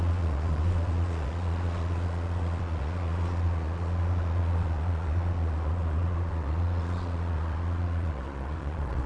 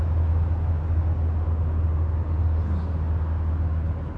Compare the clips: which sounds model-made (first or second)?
first